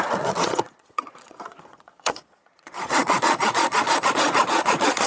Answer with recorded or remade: remade